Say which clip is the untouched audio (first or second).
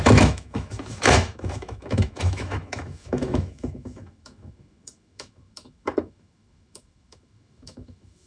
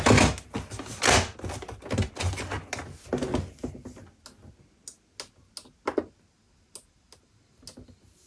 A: second